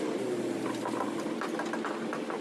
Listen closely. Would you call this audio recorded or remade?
recorded